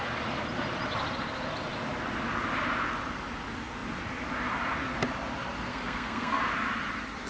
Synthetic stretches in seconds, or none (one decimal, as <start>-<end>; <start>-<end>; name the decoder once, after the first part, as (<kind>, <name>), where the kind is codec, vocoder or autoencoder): 5.7-6.4 (codec, SNAC)